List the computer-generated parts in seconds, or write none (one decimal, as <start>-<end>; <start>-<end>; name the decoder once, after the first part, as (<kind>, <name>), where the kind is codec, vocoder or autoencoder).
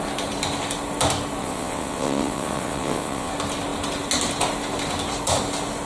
1.4-3.3 (vocoder, WaveNeXt)